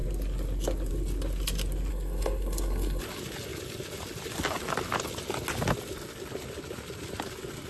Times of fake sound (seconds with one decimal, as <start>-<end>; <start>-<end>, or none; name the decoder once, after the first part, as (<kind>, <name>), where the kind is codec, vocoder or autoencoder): 1.9-3.0 (codec, SNAC)